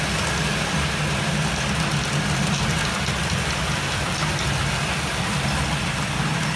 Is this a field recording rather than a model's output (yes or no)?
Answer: yes